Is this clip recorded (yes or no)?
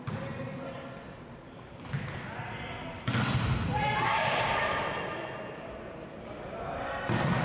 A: yes